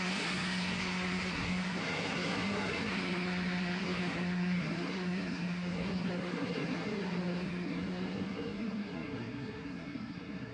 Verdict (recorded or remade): remade